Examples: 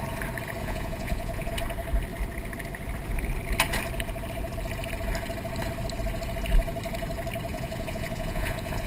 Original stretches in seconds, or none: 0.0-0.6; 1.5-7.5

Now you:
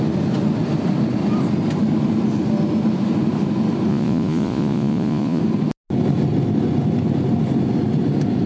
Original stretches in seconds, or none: 0.0-3.9; 5.4-8.5

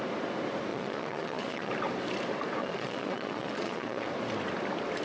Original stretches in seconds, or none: 0.0-0.7; 1.7-2.6; 4.1-5.0

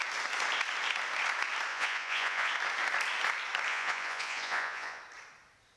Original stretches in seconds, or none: 0.0-1.7; 2.5-3.7; 5.0-5.8

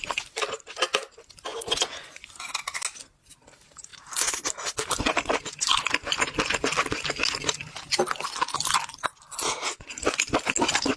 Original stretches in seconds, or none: 0.0-1.5; 2.4-11.0

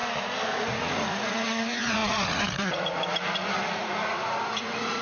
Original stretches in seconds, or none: 0.0-0.5

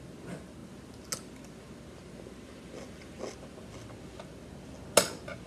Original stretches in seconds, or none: 0.0-5.5

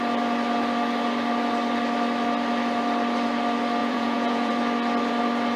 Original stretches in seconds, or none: 0.0-3.8; 4.5-5.6